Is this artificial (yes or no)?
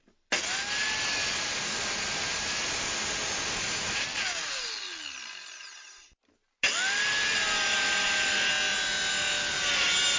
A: no